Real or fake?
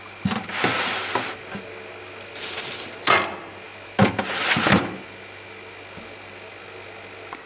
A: real